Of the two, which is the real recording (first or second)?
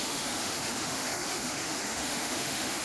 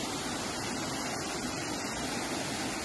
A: second